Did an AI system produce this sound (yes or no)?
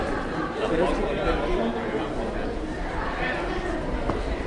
no